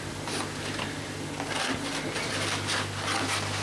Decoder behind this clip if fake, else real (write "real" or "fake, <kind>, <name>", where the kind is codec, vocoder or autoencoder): real